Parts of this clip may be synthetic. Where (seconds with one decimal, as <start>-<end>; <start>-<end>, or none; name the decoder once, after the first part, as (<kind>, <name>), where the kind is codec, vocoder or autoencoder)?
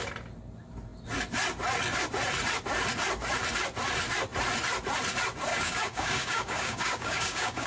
5.5-7.7 (codec, DAC)